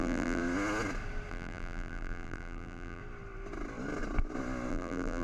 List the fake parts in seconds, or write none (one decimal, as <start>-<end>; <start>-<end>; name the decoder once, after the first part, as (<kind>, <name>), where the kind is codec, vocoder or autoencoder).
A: 0.0-0.4 (vocoder, BigVGAN v2); 1.3-3.0; 4.7-5.2